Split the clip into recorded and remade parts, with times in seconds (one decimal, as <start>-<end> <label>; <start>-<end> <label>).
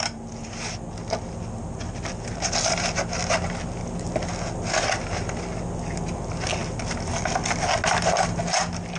0.0-9.0 recorded